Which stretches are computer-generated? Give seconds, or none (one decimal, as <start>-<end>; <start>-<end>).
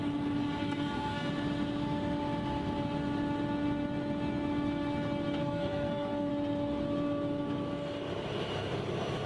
0.6-1.3; 5.4-6.3